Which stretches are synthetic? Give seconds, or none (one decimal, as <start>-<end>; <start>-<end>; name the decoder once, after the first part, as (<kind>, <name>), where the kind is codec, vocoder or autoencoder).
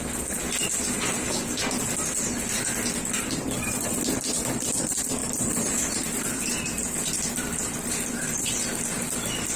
none